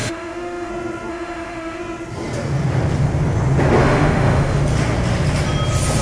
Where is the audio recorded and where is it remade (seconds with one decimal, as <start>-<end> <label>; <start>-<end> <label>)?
0.0-0.7 remade; 0.7-1.1 recorded; 1.1-1.8 remade; 1.8-3.8 recorded; 3.8-4.6 remade; 4.6-6.0 recorded